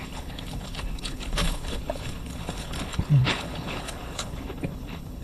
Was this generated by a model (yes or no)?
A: yes